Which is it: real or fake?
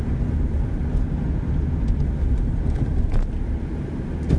real